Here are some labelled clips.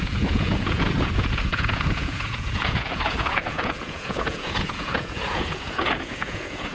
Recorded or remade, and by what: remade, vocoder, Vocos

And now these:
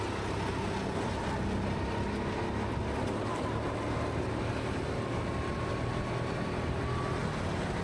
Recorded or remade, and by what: recorded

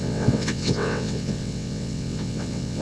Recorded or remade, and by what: remade, vocoder, WaveNeXt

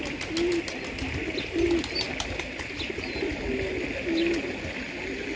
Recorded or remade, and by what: recorded